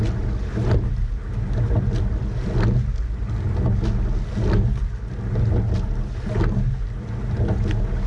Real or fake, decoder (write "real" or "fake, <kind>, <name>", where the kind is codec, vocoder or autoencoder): real